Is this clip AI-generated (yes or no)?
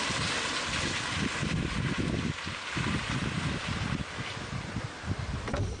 no